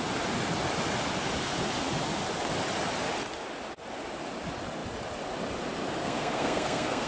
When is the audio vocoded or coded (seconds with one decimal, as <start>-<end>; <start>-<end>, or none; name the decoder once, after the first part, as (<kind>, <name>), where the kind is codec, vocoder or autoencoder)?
6.0-7.1 (codec, SNAC)